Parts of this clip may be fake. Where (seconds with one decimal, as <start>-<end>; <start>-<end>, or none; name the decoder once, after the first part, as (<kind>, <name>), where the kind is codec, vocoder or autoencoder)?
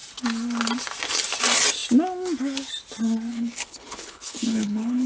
3.3-5.1 (codec, HILCodec)